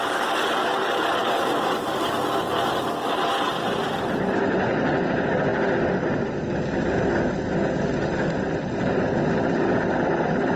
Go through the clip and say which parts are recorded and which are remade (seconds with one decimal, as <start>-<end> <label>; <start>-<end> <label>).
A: 0.0-10.6 recorded